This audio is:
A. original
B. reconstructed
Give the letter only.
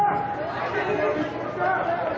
A